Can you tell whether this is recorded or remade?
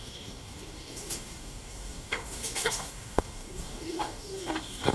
remade